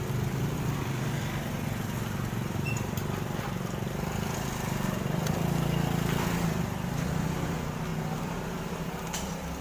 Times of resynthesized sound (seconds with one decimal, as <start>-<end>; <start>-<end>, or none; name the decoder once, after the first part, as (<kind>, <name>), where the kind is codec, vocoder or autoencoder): none